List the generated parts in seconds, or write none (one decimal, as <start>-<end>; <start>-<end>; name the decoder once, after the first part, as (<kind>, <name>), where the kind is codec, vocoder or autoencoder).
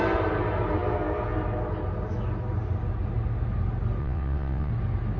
4.0-4.7 (vocoder, WaveNeXt)